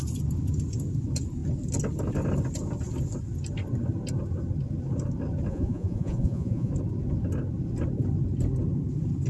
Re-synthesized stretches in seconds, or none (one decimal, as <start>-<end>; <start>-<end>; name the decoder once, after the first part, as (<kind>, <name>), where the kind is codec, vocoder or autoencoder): 5.5-6.7 (vocoder, Vocos)